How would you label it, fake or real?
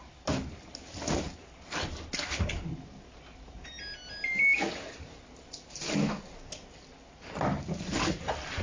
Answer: real